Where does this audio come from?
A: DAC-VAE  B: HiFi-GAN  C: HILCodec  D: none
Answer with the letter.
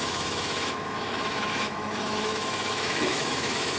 A